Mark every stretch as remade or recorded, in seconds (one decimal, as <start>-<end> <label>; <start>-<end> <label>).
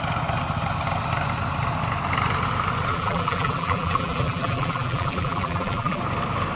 0.0-2.9 recorded; 2.9-6.0 remade; 6.0-6.6 recorded